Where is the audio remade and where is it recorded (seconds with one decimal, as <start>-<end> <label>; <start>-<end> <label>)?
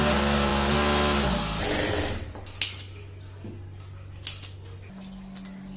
0.0-5.8 recorded